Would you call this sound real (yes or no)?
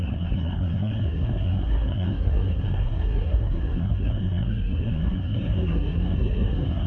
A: no